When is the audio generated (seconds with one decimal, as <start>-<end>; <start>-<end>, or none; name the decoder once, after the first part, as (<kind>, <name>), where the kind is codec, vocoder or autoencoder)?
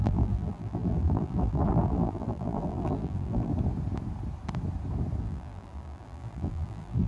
0.0-3.5 (vocoder, BigVGAN v2); 5.2-7.1